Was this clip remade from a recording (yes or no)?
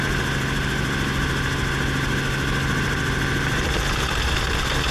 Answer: no